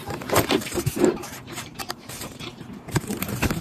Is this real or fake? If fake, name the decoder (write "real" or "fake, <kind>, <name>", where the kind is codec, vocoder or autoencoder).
fake, vocoder, BigVGAN v2